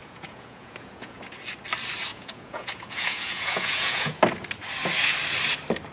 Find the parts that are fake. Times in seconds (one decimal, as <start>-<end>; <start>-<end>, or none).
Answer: 0.0-1.2; 2.1-4.2